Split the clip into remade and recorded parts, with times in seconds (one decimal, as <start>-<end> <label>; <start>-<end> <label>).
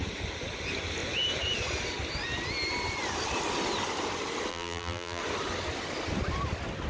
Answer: 0.0-4.5 recorded; 4.5-5.2 remade; 5.2-6.9 recorded